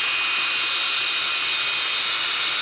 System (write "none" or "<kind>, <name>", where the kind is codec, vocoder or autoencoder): none